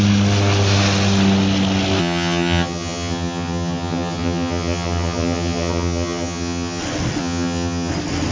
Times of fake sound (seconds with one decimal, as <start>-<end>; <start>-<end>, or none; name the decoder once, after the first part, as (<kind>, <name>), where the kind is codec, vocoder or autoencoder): 2.0-6.8 (vocoder, HiFi-GAN); 7.2-7.9